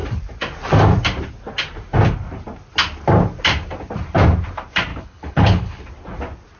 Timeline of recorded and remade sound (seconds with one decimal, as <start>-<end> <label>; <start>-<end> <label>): 0.0-4.9 recorded; 4.9-5.8 remade; 5.8-6.6 recorded